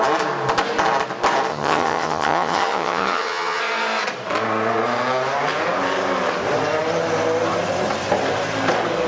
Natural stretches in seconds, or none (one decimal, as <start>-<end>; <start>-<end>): 0.0-1.5; 3.6-9.1